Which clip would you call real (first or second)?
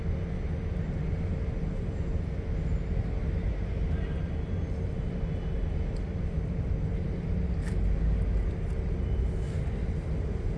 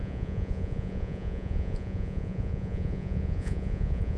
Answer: first